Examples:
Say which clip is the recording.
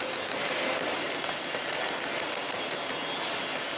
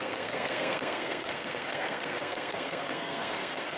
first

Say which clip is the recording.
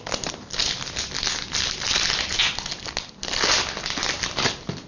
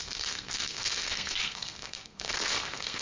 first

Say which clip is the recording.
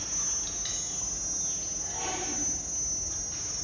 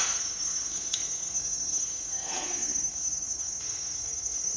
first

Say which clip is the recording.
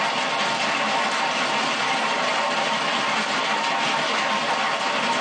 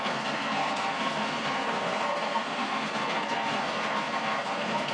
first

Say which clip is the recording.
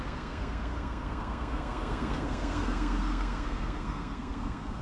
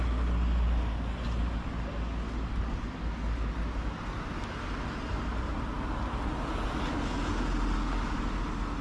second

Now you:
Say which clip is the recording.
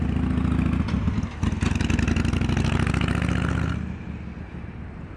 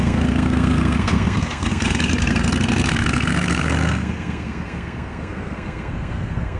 first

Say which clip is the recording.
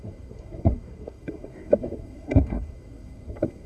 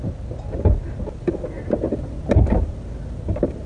second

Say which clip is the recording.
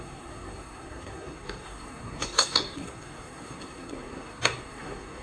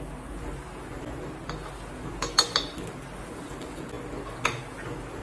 second